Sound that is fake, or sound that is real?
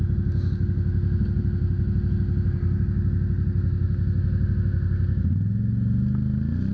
real